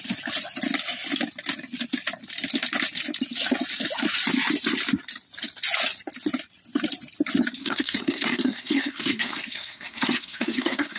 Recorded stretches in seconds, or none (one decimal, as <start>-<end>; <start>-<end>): 0.0-7.6